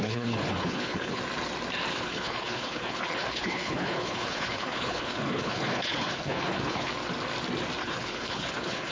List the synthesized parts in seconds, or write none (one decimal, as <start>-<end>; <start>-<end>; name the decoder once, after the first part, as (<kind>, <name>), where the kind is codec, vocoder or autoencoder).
0.0-1.2 (codec, HILCodec); 1.9-6.9; 7.8-8.9